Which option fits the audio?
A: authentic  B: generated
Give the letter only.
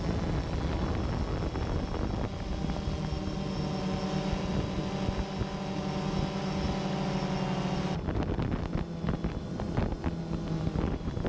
A